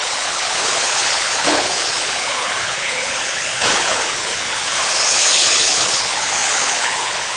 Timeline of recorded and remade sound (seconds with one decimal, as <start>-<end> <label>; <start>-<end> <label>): 0.0-7.4 remade